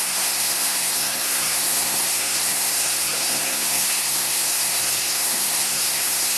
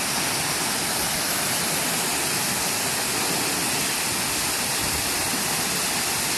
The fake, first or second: first